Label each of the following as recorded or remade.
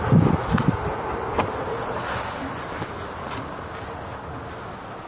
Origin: recorded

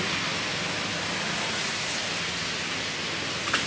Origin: recorded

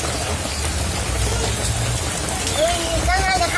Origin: recorded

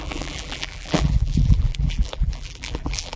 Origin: remade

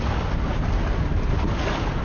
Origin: recorded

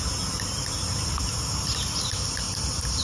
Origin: recorded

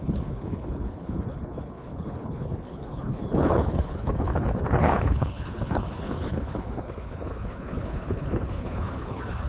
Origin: remade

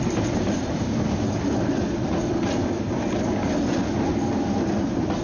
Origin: recorded